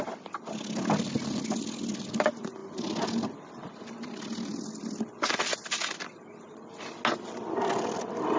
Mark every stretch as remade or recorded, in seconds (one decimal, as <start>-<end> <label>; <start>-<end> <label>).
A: 0.0-8.4 recorded